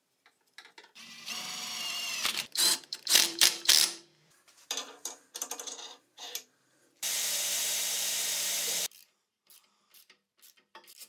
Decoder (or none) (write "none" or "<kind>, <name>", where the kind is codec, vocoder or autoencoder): vocoder, BigVGAN v2